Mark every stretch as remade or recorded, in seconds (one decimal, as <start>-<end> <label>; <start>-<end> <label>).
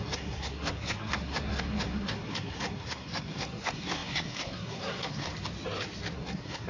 0.0-5.3 remade; 5.3-6.1 recorded; 6.1-6.7 remade